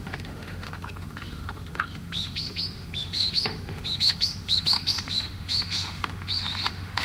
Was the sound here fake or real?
fake